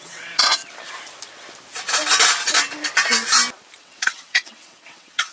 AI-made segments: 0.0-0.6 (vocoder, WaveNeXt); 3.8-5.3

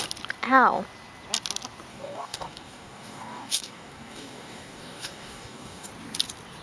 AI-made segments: 1.9-5.9 (codec, DAC)

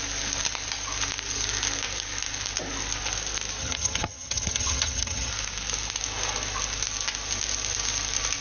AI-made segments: 3.6-5.3 (vocoder, HiFi-GAN)

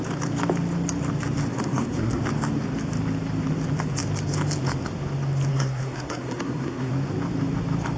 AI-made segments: 1.5-2.2 (codec, SNAC); 5.5-6.9

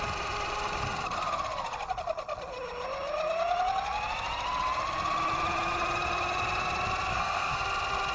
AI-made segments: 7.1-7.6 (codec, SNAC)

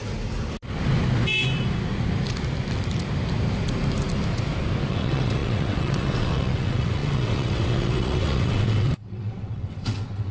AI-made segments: 4.9-10.3 (vocoder, WaveNeXt)